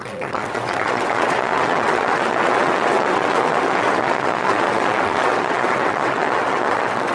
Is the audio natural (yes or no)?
no